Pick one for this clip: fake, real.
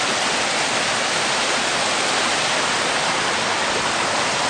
real